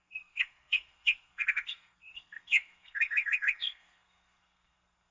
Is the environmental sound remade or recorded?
remade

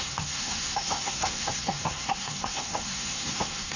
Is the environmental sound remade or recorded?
remade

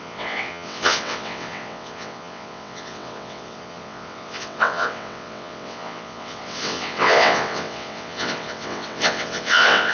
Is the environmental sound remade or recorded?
remade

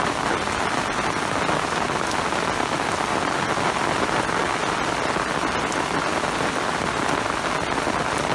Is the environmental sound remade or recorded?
recorded